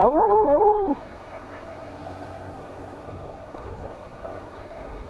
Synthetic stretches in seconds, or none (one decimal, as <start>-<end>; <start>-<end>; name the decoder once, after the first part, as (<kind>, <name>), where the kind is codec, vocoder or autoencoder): 0.0-5.1 (codec, SNAC)